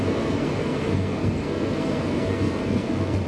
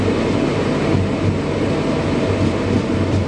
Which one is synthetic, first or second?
first